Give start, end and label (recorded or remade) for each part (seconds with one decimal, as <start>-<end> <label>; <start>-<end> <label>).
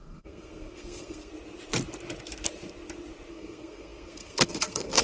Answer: 0.0-1.3 remade; 1.3-3.3 recorded; 3.3-5.0 remade